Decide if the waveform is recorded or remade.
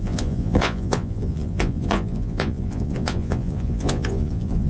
remade